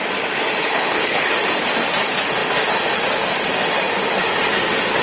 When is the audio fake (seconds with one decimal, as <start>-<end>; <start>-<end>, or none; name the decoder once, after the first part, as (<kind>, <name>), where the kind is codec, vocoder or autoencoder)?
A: 0.6-1.3 (codec, HILCodec)